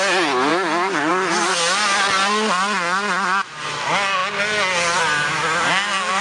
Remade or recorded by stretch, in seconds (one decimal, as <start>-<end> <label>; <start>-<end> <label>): 0.0-6.2 recorded